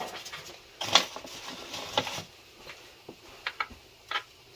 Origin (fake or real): real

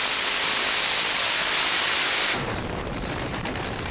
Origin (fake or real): fake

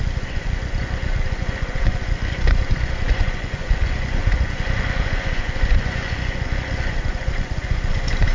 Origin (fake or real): fake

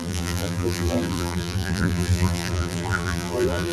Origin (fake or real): fake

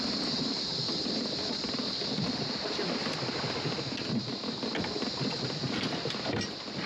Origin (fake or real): real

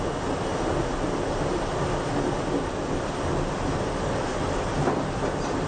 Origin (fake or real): real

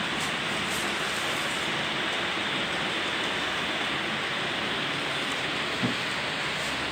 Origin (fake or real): real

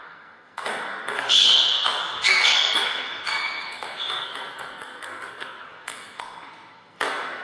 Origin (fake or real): fake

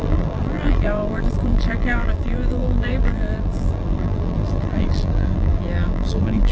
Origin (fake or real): fake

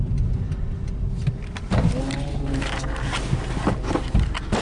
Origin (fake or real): real